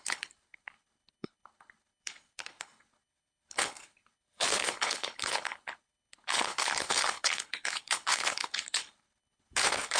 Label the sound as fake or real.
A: fake